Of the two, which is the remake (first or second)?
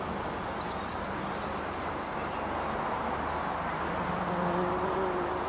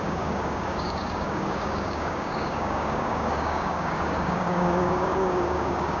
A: second